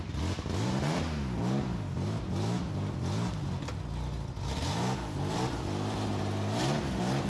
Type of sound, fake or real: real